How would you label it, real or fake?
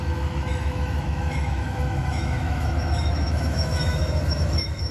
fake